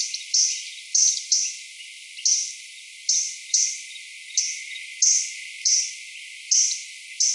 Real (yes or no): yes